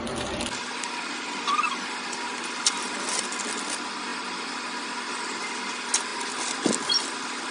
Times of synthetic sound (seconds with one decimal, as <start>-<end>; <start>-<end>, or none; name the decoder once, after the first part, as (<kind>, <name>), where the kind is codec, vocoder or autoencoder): none